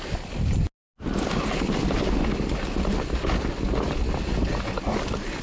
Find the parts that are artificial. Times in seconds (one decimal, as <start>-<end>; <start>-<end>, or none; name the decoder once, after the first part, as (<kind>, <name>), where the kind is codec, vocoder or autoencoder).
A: none